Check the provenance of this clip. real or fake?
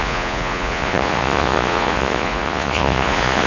fake